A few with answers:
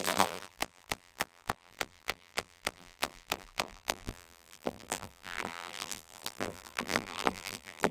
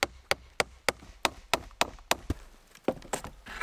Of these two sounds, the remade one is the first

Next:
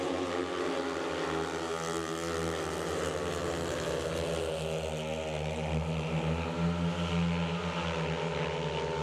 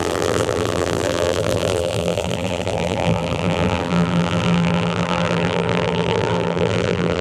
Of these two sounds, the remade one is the second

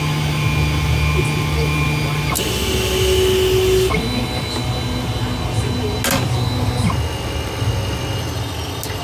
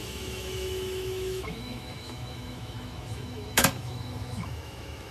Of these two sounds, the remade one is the second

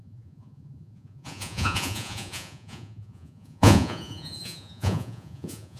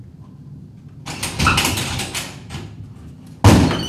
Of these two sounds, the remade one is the first